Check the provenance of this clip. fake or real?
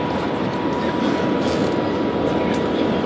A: real